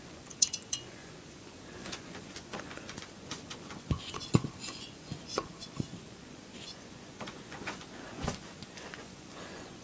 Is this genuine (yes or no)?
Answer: no